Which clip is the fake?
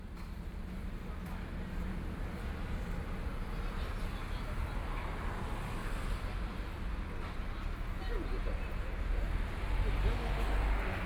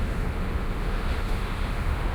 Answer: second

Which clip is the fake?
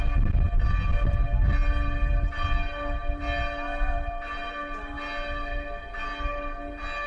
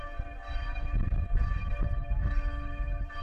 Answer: second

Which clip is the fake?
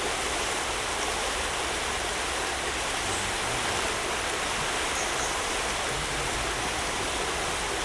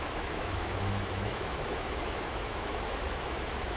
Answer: second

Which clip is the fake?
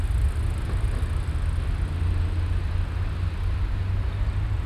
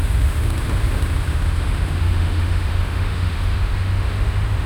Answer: second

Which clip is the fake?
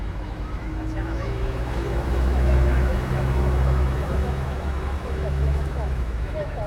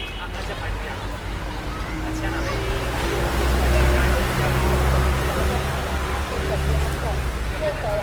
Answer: first